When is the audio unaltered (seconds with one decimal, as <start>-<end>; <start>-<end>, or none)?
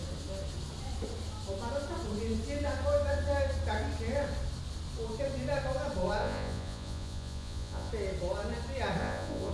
0.0-6.2; 7.9-9.0